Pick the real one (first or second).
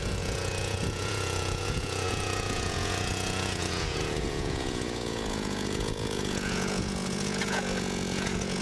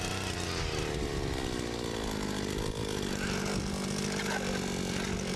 second